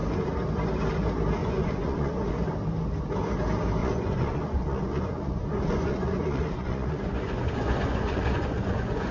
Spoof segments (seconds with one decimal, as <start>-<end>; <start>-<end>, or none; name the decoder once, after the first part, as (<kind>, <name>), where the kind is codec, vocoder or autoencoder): 1.4-2.3 (vocoder, Vocos); 3.8-9.1